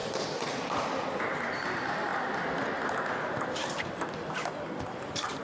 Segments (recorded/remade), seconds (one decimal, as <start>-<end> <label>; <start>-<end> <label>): 0.0-1.2 remade; 1.2-5.4 recorded